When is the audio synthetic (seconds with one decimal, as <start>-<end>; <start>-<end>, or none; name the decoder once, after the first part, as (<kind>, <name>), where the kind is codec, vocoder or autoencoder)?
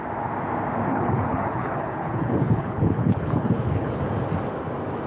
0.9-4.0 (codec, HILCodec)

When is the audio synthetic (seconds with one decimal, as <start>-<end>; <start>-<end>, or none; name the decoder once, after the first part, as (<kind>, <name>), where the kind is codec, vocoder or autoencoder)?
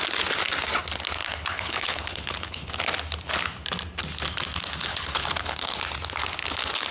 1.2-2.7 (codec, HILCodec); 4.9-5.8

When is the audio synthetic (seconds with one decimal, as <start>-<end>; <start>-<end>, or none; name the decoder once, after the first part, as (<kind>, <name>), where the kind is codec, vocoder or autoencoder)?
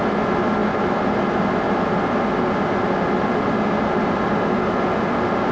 none